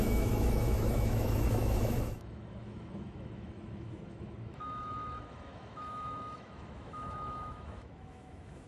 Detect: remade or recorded remade